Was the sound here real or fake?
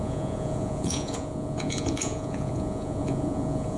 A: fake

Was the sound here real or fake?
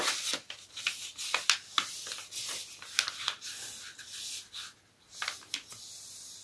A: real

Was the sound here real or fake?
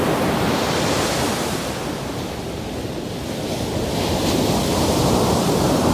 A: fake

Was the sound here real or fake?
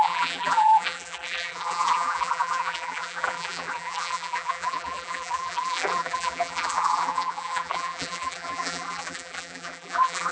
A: fake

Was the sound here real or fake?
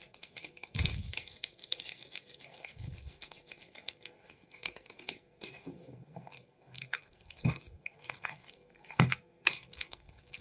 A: fake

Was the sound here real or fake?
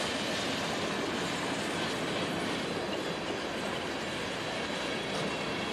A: real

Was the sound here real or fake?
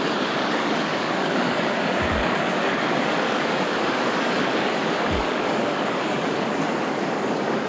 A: fake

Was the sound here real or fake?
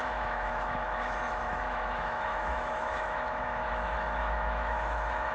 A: fake